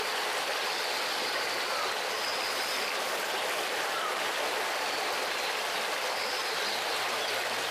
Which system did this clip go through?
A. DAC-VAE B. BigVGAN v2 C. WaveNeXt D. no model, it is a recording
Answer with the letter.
D